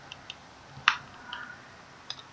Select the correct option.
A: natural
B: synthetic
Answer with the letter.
A